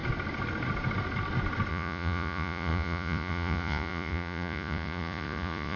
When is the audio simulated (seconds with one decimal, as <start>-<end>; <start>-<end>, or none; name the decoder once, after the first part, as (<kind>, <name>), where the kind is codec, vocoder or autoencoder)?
1.7-5.8 (vocoder, Vocos)